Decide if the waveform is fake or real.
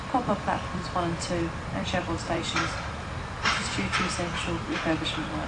fake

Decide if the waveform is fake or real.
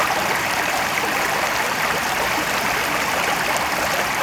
fake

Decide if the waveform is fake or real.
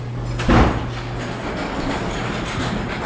real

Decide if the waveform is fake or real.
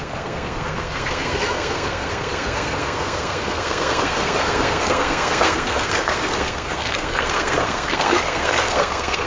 fake